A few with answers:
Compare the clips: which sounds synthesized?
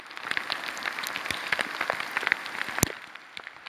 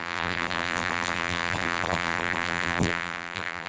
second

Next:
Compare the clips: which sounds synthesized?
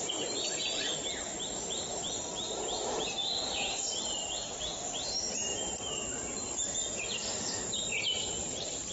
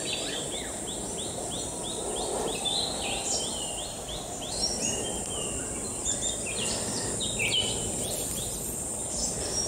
first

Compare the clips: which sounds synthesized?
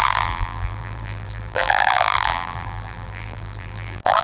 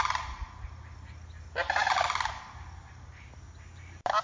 first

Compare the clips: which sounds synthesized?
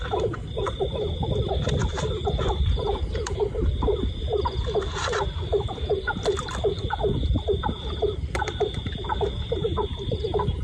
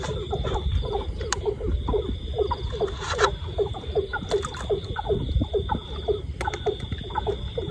first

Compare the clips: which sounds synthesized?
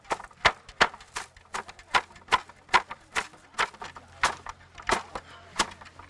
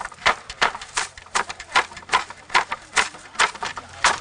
second